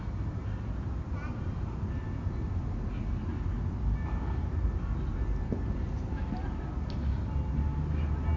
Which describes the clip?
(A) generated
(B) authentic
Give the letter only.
B